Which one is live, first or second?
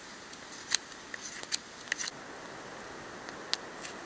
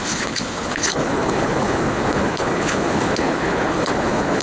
first